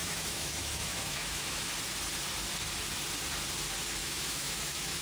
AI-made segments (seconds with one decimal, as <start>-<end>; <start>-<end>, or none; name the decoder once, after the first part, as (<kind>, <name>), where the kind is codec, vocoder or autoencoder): 0.0-1.6 (autoencoder, DAC-VAE); 4.0-5.0